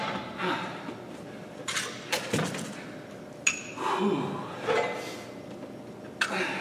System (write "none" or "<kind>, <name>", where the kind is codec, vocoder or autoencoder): none